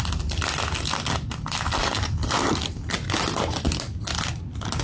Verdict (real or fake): real